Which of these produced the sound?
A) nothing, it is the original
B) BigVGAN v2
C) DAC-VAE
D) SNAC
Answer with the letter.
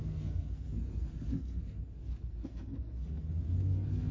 D